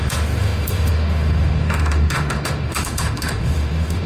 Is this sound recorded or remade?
remade